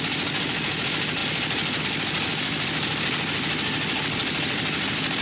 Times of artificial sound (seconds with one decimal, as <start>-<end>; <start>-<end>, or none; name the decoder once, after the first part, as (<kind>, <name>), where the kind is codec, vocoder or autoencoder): none